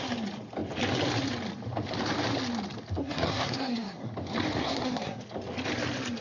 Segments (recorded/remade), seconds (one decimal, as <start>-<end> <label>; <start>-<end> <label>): 0.0-3.0 recorded; 3.0-4.1 remade; 4.1-4.6 recorded; 4.6-5.2 remade; 5.2-6.2 recorded